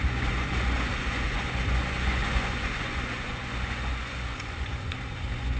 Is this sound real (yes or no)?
no